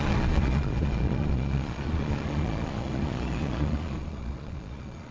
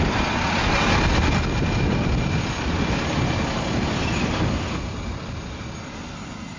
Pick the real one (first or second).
second